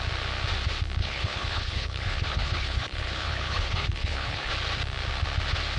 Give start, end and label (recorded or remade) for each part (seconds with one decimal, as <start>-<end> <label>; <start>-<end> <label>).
0.0-1.0 recorded; 1.0-4.5 remade; 4.5-5.8 recorded